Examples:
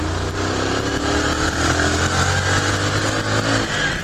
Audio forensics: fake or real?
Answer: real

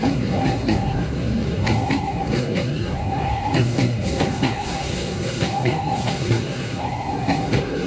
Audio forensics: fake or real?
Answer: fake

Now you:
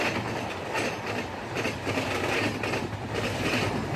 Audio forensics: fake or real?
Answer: real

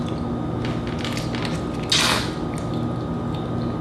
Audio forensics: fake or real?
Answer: real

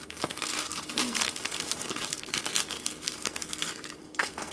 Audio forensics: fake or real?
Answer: fake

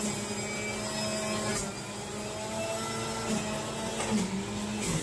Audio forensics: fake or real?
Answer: real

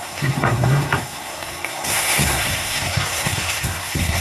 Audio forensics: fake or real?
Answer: fake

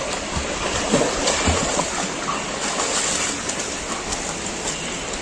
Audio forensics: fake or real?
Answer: real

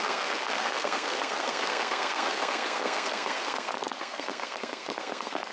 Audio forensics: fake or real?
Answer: fake